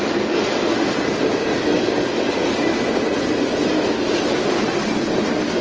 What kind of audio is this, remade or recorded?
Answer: recorded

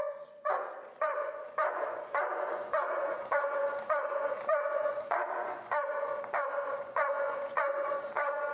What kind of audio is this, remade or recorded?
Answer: remade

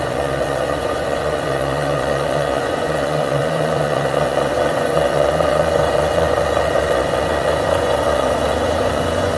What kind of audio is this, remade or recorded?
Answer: remade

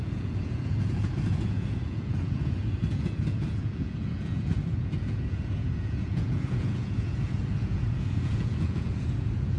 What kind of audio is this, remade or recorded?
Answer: remade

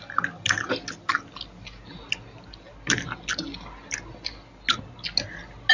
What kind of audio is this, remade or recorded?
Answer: recorded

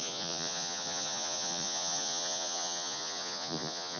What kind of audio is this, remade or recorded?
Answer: remade